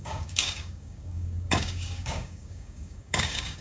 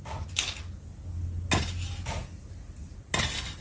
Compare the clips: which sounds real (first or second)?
second